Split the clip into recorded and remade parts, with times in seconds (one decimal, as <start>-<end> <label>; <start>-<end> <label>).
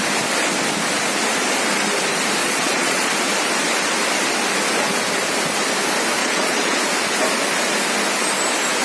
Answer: 0.0-2.4 recorded; 2.4-3.1 remade; 3.1-6.2 recorded; 6.2-6.8 remade; 6.8-8.8 recorded